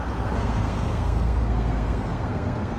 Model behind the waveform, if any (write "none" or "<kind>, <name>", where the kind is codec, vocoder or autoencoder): codec, SNAC